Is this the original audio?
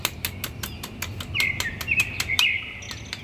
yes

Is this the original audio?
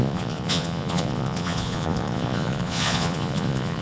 no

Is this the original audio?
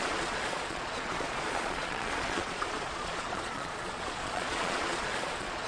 no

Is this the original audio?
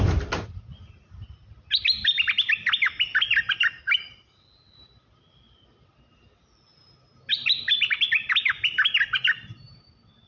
yes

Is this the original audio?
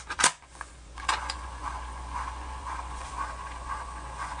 no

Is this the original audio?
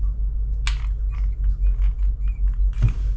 yes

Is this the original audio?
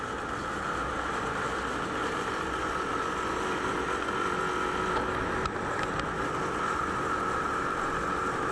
yes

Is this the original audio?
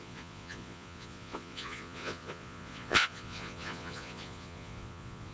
no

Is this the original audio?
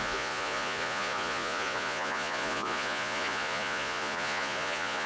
no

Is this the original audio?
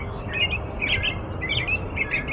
yes